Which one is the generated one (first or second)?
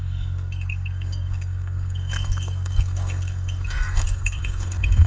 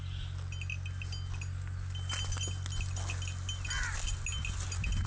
first